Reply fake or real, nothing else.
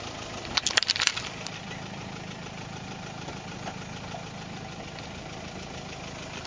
fake